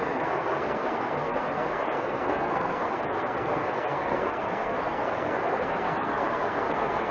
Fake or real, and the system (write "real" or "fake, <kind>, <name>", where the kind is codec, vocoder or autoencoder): fake, codec, SNAC